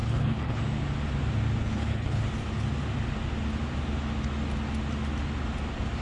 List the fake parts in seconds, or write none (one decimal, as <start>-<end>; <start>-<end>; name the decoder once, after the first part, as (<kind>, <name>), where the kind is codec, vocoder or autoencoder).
0.0-0.6 (codec, HILCodec); 1.6-2.2